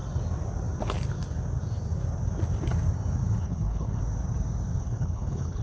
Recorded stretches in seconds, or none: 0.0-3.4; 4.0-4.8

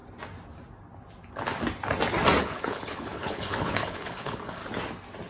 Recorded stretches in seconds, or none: 0.0-2.4; 4.6-5.3

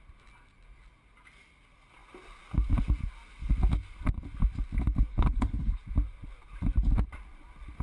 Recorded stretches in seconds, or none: 0.0-5.1; 5.8-7.8

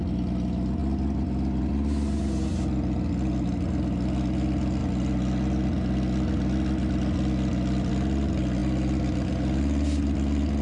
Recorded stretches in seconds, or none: 0.0-10.6

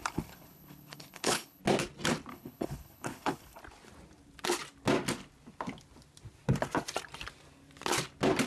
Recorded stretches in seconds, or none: 1.6-2.3; 3.6-8.5

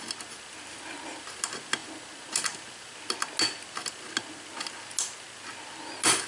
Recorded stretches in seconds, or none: 0.0-6.3